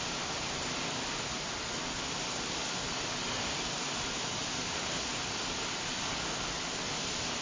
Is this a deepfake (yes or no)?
no